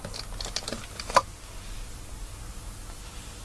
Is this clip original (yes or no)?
yes